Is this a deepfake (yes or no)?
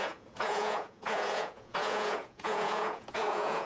yes